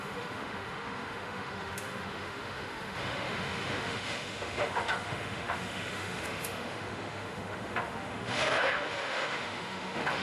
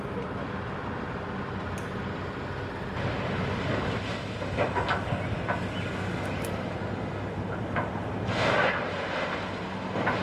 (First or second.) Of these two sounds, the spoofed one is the first